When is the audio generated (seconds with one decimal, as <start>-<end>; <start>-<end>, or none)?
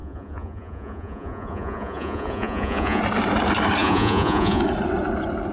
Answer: 0.0-3.0; 3.8-4.6